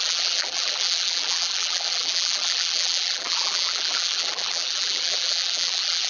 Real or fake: fake